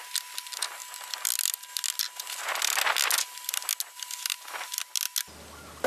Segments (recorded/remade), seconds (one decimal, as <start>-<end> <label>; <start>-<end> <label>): 0.0-5.9 recorded